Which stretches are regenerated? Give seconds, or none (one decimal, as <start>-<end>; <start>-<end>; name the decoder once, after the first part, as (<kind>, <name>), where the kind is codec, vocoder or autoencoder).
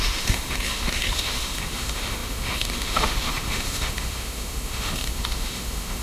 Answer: 0.0-6.0 (autoencoder, DAC-VAE)